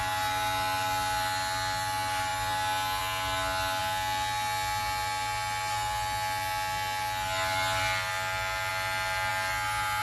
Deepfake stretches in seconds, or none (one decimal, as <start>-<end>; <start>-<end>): none

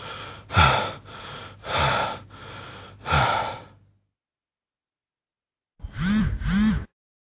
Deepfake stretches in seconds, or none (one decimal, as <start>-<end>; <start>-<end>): none

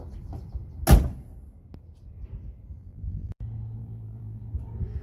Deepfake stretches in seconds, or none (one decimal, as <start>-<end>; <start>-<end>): 2.8-3.4; 3.8-4.4

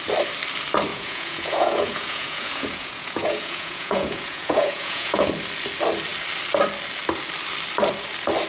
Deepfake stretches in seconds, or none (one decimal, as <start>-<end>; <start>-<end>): 0.9-5.3

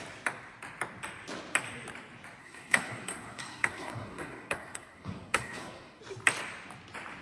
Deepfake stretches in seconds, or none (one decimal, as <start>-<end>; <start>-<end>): 2.4-6.0

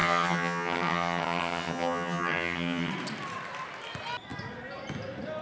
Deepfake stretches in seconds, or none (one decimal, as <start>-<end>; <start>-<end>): 0.0-2.9

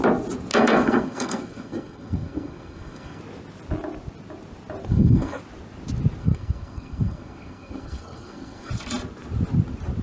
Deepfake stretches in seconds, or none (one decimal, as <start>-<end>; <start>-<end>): 0.5-3.2; 4.9-5.4; 6.2-8.7

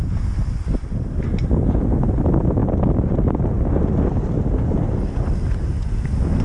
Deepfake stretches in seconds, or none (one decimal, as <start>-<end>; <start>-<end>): 2.6-5.7